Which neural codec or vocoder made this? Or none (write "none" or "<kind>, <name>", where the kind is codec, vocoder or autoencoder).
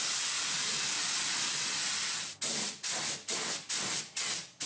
none